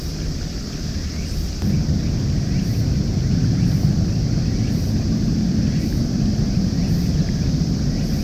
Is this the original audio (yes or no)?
yes